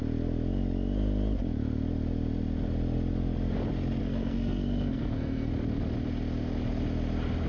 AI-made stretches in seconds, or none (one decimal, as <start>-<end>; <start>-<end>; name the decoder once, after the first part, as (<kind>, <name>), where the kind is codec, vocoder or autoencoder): 4.0-5.5 (codec, SNAC)